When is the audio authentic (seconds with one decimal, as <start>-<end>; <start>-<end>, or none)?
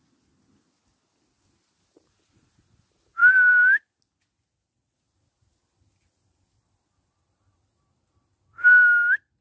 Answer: 0.0-9.4